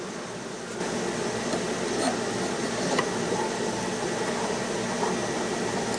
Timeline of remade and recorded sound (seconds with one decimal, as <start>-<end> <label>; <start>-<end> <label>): 0.0-6.0 recorded